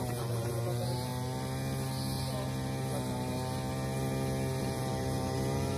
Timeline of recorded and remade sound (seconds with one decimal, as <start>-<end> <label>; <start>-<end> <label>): 0.0-1.1 remade; 1.1-4.6 recorded; 4.6-5.8 remade